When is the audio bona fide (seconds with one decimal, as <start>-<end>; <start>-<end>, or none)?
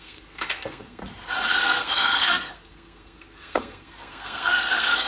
1.0-1.5